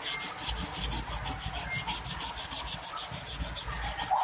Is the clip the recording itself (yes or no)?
yes